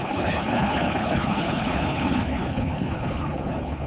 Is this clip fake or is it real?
fake